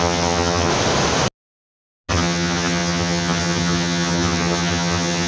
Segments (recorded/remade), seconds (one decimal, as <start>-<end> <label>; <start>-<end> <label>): 0.0-0.7 remade; 0.7-2.1 recorded; 2.1-5.3 remade